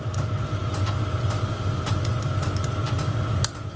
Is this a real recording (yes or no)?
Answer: yes